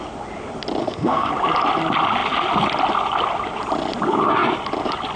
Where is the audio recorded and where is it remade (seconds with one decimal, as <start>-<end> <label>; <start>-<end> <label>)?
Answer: 0.0-0.8 recorded; 0.8-1.3 remade; 1.3-5.2 recorded